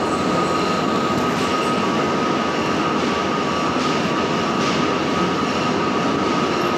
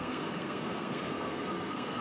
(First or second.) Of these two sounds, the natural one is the first